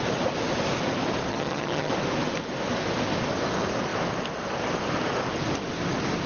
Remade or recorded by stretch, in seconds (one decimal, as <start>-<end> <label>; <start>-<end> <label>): 0.0-1.3 recorded; 1.3-1.9 remade; 1.9-6.3 recorded